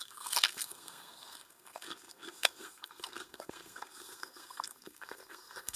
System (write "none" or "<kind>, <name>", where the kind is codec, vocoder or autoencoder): codec, SNAC